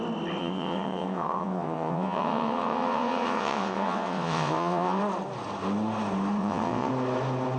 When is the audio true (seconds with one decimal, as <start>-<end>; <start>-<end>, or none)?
0.0-0.4; 5.0-6.4; 6.9-7.6